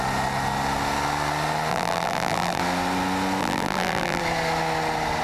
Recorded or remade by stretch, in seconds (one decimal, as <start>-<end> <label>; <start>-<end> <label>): 0.0-1.7 recorded; 1.7-2.6 remade; 2.6-3.4 recorded; 3.4-4.2 remade; 4.2-5.2 recorded

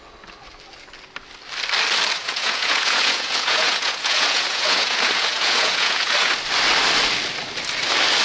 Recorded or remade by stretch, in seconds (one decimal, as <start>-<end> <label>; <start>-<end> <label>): 0.0-2.2 recorded; 2.2-6.3 remade; 6.3-8.2 recorded

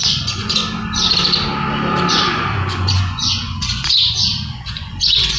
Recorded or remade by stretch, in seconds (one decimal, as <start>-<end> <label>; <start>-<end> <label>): 0.0-0.6 remade; 0.6-2.1 recorded; 2.1-5.4 remade

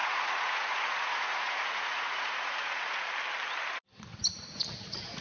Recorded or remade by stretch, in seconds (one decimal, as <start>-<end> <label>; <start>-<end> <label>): 0.0-3.1 remade; 3.1-4.1 recorded; 4.1-5.2 remade

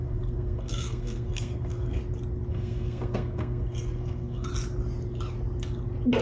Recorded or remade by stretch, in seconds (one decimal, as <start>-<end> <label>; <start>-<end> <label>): 0.0-2.0 remade; 2.0-2.5 recorded; 2.5-4.5 remade; 4.5-6.2 recorded

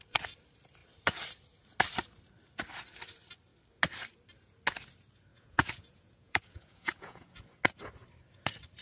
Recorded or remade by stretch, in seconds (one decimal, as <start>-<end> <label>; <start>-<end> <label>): 0.0-5.3 recorded; 5.3-7.6 remade; 7.6-8.8 recorded

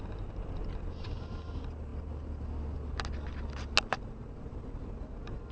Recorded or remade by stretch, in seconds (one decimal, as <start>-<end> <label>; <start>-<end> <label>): 0.0-5.5 recorded

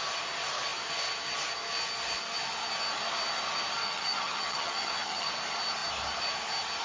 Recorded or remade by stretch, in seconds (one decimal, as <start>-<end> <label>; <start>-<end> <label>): 0.0-3.8 recorded; 3.8-5.3 remade; 5.3-6.8 recorded